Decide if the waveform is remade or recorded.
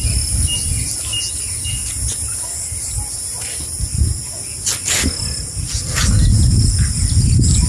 recorded